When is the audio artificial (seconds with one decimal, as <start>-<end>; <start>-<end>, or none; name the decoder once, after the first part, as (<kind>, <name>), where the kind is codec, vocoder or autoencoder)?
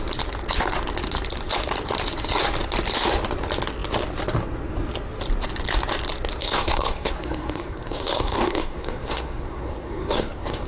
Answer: 6.4-10.7 (codec, SNAC)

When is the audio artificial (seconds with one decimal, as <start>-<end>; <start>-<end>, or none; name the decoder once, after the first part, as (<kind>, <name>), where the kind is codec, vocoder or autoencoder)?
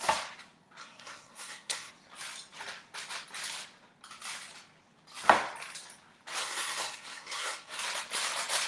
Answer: 0.8-1.9 (codec, SNAC); 6.4-7.8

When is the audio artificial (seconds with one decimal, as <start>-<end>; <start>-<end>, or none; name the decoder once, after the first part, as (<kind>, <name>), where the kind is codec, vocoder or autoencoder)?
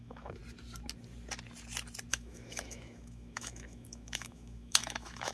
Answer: 0.0-0.4 (autoencoder, DAC-VAE); 2.1-5.3